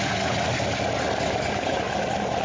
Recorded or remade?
recorded